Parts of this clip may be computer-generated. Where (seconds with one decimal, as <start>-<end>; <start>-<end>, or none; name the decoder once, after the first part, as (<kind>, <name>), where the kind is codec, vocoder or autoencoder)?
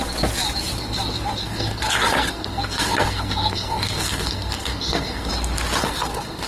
1.4-5.3 (codec, SNAC); 5.8-6.5